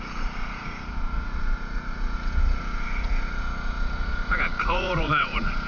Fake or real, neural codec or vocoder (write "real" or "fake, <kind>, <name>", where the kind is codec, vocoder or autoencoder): fake, vocoder, Vocos